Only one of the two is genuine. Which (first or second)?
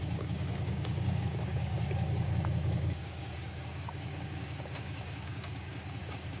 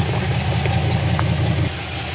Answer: second